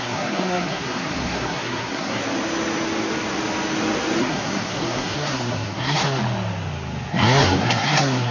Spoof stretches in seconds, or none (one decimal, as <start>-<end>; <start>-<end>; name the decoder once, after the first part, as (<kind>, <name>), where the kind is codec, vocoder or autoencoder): 0.0-2.2 (codec, SNAC); 4.2-6.2; 7.1-8.3